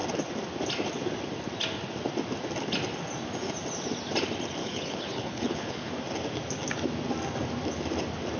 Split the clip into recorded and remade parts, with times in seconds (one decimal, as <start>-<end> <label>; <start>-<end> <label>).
0.0-4.6 recorded; 4.6-5.9 remade; 5.9-8.4 recorded